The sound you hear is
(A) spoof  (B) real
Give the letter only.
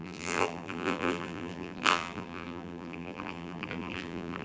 A